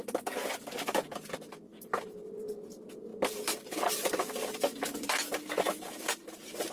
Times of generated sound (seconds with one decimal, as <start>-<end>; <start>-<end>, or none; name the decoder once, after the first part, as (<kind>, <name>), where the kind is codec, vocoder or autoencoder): 1.7-2.5 (vocoder, BigVGAN v2); 3.1-6.7